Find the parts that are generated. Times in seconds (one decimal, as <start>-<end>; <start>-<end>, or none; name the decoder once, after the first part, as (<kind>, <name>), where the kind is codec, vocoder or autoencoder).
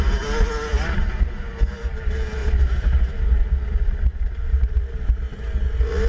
2.4-3.1 (vocoder, BigVGAN v2)